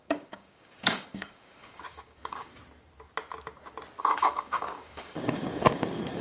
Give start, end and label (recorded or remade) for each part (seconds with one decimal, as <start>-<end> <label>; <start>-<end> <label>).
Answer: 0.0-2.6 remade; 2.6-4.0 recorded; 4.0-6.2 remade